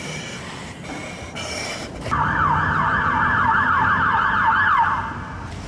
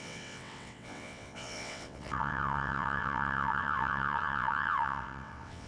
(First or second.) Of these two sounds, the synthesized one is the second